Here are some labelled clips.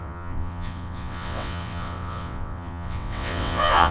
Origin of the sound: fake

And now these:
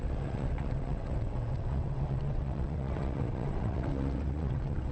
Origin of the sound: fake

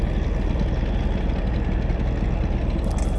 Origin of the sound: real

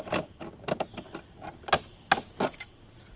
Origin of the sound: real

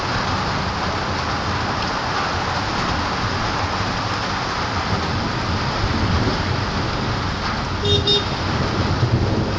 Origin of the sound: real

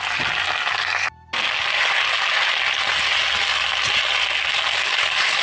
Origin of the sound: real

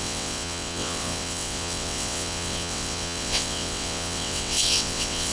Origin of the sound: fake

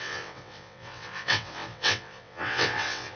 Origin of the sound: fake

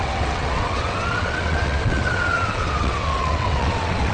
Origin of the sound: fake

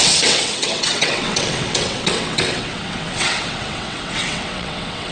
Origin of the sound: fake